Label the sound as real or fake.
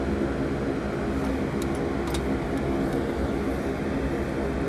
real